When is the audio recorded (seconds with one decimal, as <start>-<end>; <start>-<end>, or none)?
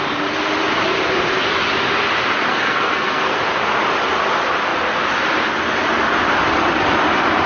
0.0-2.5; 3.4-7.5